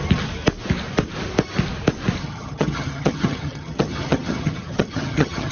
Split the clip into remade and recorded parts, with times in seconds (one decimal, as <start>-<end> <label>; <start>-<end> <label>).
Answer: 0.0-2.2 recorded; 2.2-5.5 remade

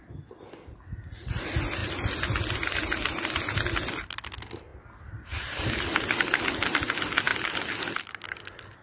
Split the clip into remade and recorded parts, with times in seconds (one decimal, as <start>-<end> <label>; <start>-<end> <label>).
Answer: 0.0-8.8 recorded

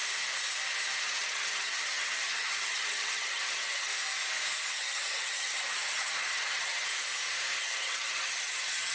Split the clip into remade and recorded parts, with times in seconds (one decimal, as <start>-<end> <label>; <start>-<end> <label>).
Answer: 0.0-1.0 recorded; 1.0-3.9 remade; 3.9-4.7 recorded; 4.7-6.9 remade; 6.9-7.6 recorded; 7.6-8.9 remade

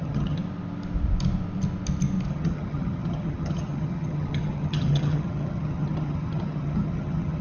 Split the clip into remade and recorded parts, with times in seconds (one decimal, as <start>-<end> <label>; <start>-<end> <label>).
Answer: 0.0-0.4 remade; 0.4-2.3 recorded; 2.3-7.4 remade